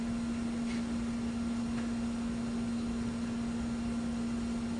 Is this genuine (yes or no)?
yes